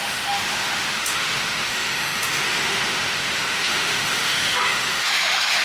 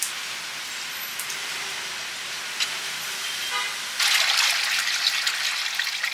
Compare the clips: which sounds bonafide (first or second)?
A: second